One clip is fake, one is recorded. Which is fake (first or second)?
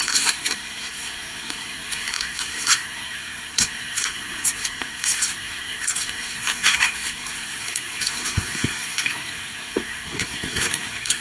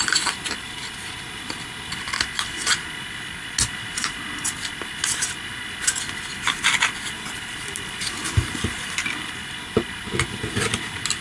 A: first